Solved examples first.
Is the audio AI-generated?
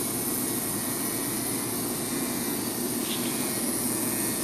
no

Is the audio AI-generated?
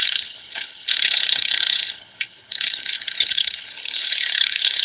yes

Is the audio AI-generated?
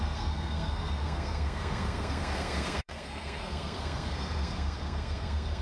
yes